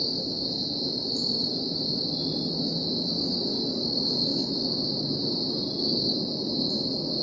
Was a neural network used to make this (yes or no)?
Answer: no